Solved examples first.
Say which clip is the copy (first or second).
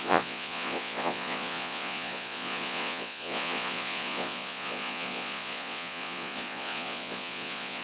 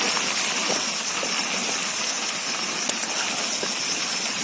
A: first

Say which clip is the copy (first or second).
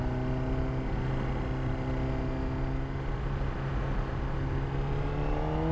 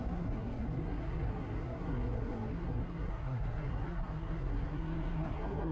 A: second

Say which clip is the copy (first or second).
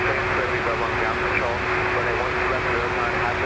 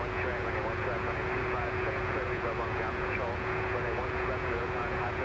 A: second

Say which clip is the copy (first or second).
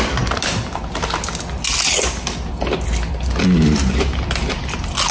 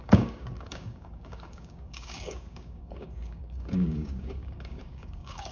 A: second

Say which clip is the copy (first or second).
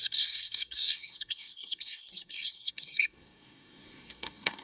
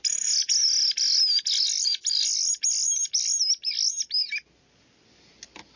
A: first